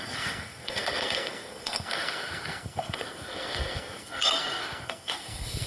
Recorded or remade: remade